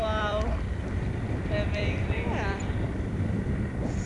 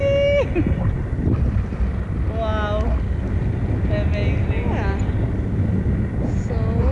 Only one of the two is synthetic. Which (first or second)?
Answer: first